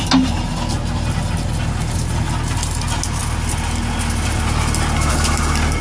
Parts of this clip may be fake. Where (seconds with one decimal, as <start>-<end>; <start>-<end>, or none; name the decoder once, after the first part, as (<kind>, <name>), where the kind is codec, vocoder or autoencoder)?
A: none